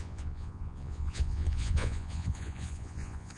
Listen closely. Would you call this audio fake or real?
fake